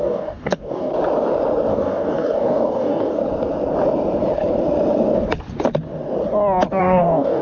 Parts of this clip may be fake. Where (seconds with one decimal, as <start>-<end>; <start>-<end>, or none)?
0.0-0.9; 1.7-3.2; 6.8-7.4